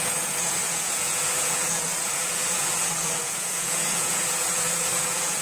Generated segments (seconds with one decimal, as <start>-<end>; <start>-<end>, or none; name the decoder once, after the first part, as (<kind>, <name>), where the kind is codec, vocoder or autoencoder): 0.0-5.4 (vocoder, Vocos)